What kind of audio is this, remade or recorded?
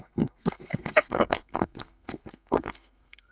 remade